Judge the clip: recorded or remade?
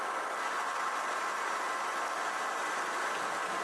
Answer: recorded